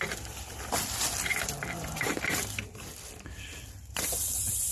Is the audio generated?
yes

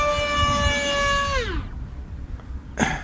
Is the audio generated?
no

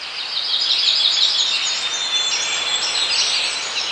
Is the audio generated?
no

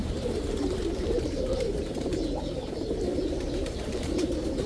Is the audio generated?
yes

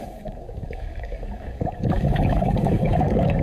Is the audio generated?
yes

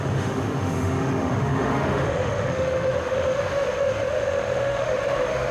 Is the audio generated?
yes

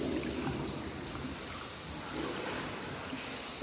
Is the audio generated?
no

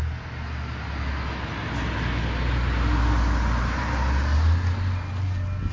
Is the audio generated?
no